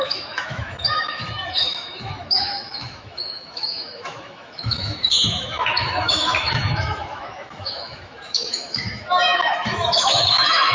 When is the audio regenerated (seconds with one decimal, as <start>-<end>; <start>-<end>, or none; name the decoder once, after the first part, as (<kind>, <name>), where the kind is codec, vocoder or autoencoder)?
0.0-10.7 (autoencoder, DAC-VAE)